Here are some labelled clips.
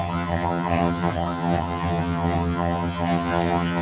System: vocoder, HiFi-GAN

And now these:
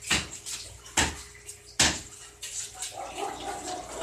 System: none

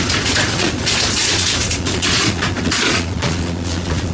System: vocoder, Vocos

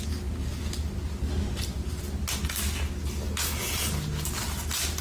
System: none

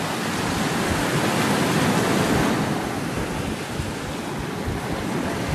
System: none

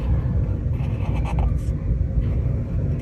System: none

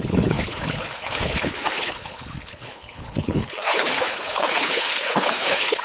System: codec, HILCodec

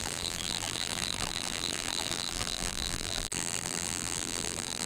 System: vocoder, BigVGAN v2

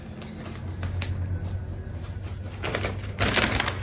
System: none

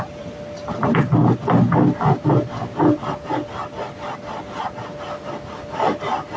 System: none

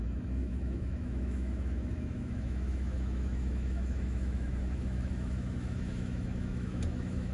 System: autoencoder, DAC-VAE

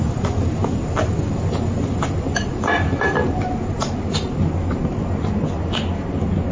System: none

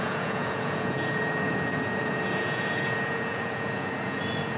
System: vocoder, Vocos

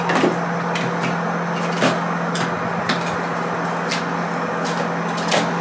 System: none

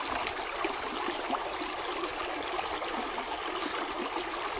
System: none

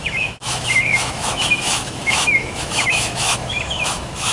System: autoencoder, DAC-VAE